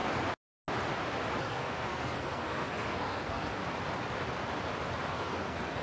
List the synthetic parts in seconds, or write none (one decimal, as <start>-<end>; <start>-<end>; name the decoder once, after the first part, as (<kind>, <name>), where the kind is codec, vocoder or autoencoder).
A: 1.4-3.6 (codec, SNAC); 5.1-5.8